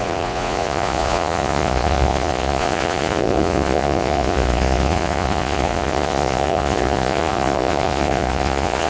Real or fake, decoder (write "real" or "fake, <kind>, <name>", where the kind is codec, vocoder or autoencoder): fake, vocoder, Vocos